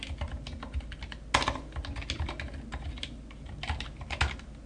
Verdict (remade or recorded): recorded